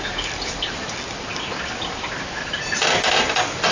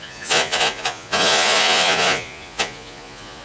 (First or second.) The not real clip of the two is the second